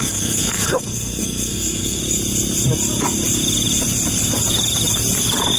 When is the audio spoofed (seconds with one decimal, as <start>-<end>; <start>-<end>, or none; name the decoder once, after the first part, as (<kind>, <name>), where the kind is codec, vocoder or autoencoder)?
0.0-2.0 (codec, SNAC)